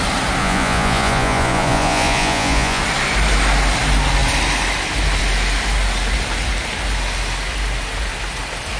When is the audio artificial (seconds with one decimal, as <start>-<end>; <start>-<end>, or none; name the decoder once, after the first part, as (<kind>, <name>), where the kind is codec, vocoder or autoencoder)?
0.4-2.8 (vocoder, Vocos)